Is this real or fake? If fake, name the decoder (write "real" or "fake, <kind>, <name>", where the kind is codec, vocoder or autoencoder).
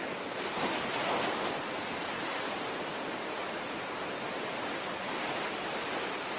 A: real